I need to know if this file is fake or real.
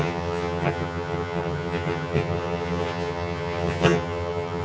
fake